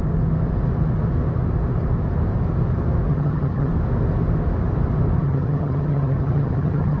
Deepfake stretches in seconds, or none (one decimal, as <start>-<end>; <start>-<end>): 3.1-3.7; 5.2-7.0